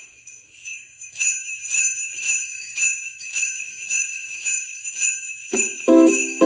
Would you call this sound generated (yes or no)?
yes